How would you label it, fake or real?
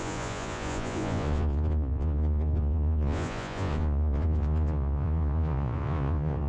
fake